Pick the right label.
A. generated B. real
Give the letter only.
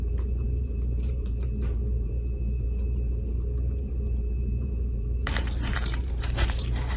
A